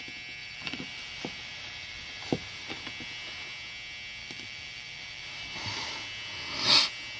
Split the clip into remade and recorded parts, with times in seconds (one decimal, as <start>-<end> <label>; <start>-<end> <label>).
0.0-0.4 recorded; 0.4-2.9 remade; 2.9-4.2 recorded; 4.2-5.9 remade; 5.9-7.2 recorded